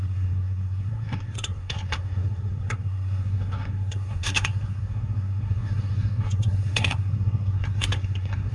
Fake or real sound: fake